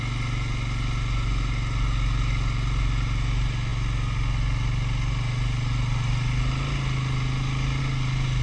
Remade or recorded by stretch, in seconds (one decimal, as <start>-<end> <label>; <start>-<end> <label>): 0.0-8.4 recorded